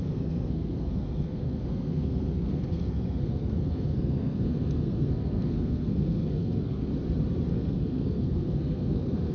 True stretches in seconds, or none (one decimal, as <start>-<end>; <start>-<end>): 6.9-7.5